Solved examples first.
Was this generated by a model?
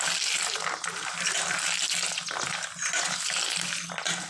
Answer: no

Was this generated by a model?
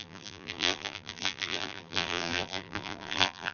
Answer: yes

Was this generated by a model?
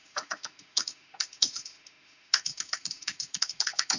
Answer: yes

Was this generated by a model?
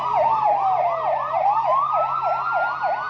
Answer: no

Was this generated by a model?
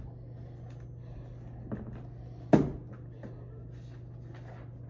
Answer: no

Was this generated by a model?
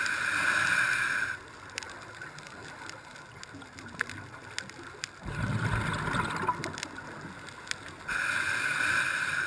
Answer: no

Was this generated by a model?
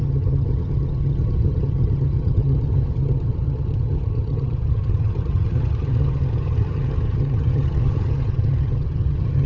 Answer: yes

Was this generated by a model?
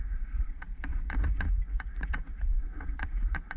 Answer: yes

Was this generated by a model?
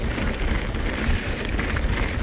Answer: no